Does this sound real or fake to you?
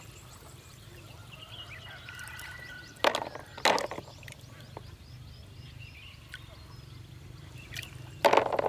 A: real